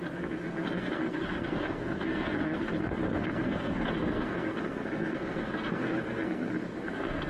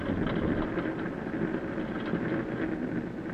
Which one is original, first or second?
second